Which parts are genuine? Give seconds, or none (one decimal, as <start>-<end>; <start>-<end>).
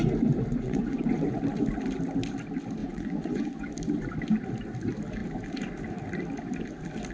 0.0-0.5; 1.4-2.8; 3.7-7.1